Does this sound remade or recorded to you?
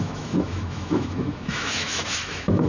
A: remade